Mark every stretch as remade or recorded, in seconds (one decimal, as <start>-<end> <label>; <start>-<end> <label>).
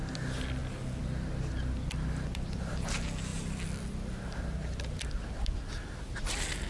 0.0-6.7 recorded